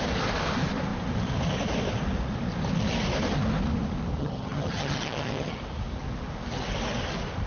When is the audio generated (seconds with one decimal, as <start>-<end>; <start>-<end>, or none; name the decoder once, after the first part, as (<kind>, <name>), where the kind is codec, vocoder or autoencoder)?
4.2-5.6 (vocoder, HiFi-GAN)